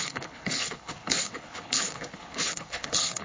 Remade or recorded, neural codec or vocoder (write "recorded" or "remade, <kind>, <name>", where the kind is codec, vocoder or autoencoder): remade, codec, HILCodec